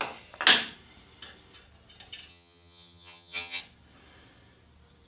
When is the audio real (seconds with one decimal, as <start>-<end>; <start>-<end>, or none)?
0.0-2.3; 3.6-5.1